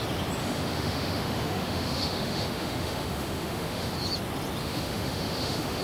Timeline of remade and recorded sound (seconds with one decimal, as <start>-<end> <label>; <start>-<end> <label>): 0.0-0.4 recorded; 0.4-3.9 remade; 3.9-4.6 recorded; 4.6-5.8 remade